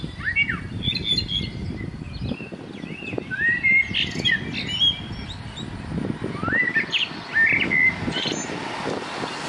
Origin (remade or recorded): recorded